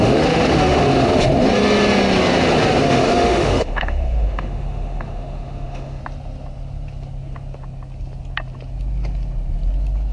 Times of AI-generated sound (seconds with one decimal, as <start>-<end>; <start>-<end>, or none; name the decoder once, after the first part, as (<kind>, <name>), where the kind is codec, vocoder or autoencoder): 0.0-1.3 (autoencoder, DAC-VAE); 2.8-6.0